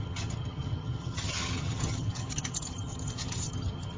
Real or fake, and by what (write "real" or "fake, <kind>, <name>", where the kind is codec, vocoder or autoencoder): fake, vocoder, HiFi-GAN